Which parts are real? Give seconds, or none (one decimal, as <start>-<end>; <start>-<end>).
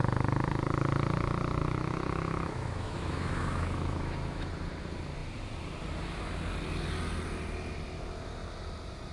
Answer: 0.0-1.6; 4.5-9.1